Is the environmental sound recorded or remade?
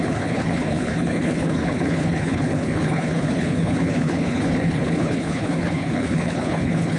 remade